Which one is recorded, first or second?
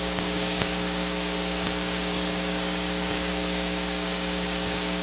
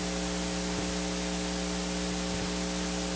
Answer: second